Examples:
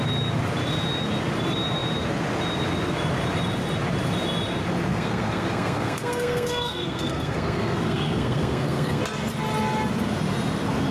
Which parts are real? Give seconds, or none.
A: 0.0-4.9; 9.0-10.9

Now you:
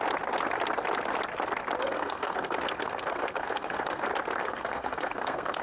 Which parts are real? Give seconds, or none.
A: 0.0-1.8; 4.0-4.4

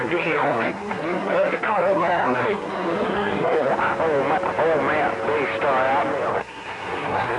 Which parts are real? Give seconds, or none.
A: 3.7-6.3

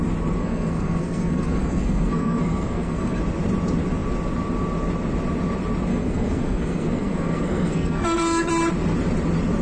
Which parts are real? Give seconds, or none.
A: 0.0-0.4; 3.2-5.9; 8.5-9.6

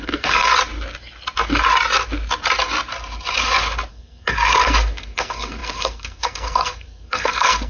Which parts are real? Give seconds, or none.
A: 0.5-3.9

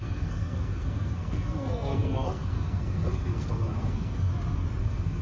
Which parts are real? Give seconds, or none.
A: 4.3-4.8